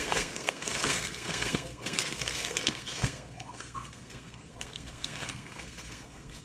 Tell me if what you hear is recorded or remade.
remade